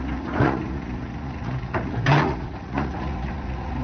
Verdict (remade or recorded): remade